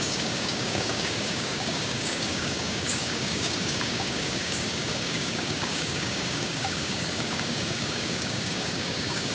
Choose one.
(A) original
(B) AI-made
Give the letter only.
B